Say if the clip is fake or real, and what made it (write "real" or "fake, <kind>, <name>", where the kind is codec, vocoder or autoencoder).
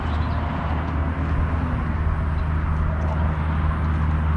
real